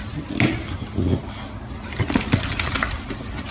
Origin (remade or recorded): recorded